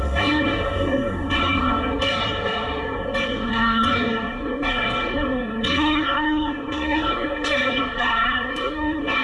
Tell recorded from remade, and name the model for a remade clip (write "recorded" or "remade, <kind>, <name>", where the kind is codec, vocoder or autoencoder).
remade, codec, SNAC